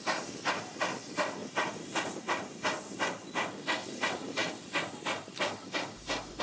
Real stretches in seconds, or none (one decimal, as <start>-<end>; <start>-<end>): 0.0-6.4